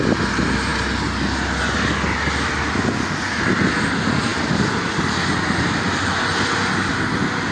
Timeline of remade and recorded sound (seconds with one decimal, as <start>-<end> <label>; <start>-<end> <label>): 0.0-7.5 recorded